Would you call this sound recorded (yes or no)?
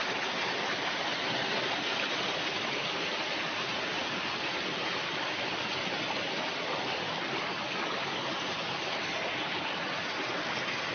yes